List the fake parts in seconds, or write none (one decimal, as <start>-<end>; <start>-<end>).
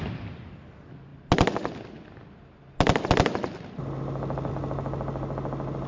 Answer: none